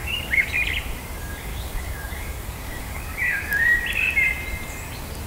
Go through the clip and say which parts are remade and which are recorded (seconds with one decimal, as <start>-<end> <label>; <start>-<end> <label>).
0.0-0.5 remade; 0.5-1.5 recorded; 1.5-3.8 remade; 3.8-5.3 recorded